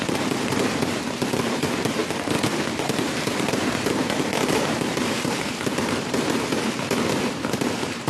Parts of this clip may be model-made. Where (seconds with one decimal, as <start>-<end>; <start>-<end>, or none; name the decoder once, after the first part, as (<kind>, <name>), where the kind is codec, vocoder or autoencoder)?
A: 0.0-2.0 (vocoder, BigVGAN v2); 3.0-8.1